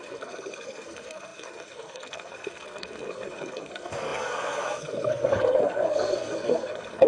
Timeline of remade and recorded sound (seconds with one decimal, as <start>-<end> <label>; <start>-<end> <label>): 0.0-7.1 remade